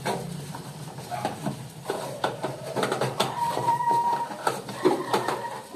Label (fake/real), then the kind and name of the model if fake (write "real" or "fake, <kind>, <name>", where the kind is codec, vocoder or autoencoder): fake, vocoder, BigVGAN v2